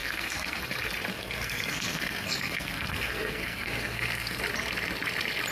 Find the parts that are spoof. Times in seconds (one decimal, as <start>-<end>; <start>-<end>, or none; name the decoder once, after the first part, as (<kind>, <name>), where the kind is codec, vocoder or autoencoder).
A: 0.0-0.6 (codec, SNAC); 1.1-4.4